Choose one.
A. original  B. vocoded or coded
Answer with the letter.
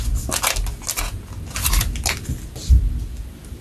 A